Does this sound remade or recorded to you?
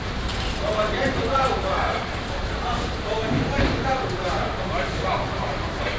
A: remade